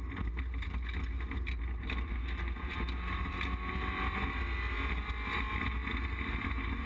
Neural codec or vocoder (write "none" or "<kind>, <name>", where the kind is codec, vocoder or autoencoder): none